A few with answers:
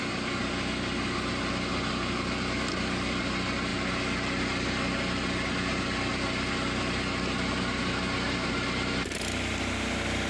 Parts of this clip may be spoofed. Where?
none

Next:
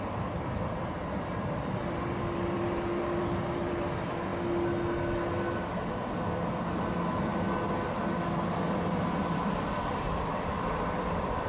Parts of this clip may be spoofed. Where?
0.0-4.3 (vocoder, BigVGAN v2); 8.2-11.5

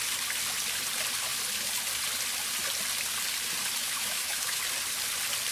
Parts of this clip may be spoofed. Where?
3.8-4.6 (autoencoder, DAC-VAE)

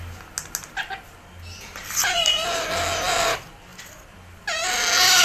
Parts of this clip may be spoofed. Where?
none

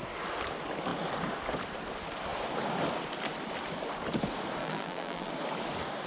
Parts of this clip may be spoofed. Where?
4.6-5.3 (vocoder, BigVGAN v2)

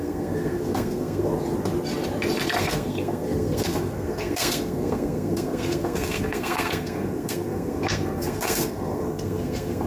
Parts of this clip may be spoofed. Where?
0.0-1.3 (codec, SNAC); 2.6-9.9

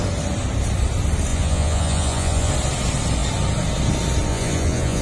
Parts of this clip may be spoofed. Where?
1.3-2.5 (vocoder, Vocos); 4.3-5.0